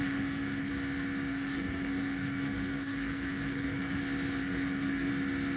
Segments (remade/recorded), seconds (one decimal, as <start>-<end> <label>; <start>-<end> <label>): 0.0-0.7 remade; 0.7-1.3 recorded; 1.3-4.0 remade; 4.0-4.4 recorded; 4.4-5.1 remade; 5.1-5.6 recorded